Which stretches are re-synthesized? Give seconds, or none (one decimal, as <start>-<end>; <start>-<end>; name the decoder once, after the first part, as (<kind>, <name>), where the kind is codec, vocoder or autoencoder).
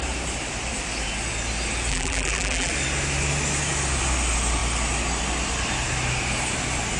1.9-2.7 (vocoder, BigVGAN v2)